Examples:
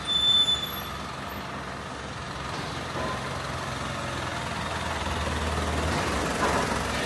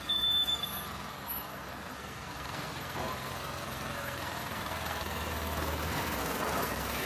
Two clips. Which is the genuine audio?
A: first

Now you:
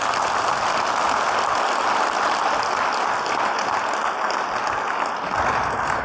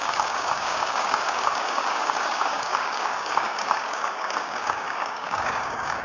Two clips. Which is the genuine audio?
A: first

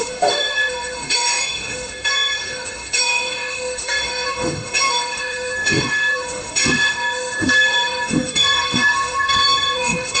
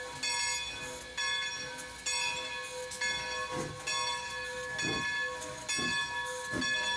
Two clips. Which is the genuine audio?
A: second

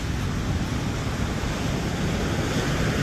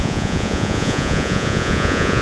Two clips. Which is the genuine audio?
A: first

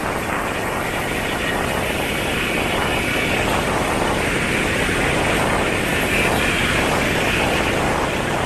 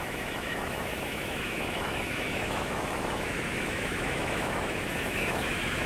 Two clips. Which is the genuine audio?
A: first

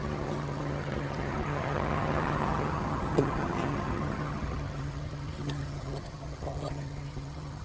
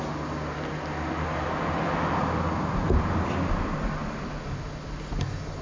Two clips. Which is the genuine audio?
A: second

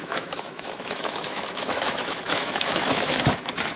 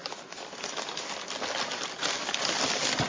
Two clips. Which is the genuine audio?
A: second